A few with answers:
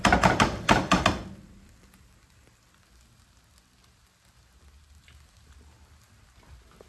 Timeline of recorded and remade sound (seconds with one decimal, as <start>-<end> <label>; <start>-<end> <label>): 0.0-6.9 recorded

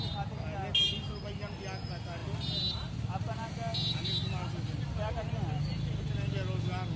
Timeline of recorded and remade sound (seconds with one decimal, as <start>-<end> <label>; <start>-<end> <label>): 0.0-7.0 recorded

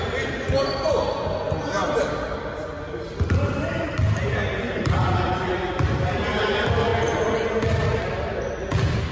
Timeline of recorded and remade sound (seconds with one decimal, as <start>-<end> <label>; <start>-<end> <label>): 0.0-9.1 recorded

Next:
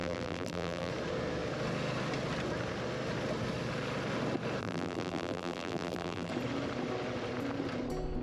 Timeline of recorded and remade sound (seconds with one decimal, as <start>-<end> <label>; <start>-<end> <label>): 0.0-0.9 remade; 0.9-4.6 recorded; 4.6-6.3 remade; 6.3-8.2 recorded

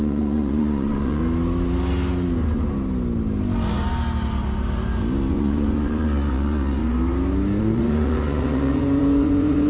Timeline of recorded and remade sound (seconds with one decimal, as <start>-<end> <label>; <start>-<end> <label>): 0.0-1.2 remade; 1.2-5.3 recorded; 5.3-6.8 remade; 6.8-7.6 recorded; 7.6-9.7 remade